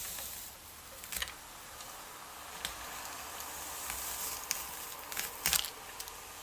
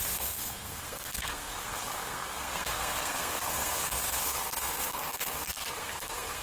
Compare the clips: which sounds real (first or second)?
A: first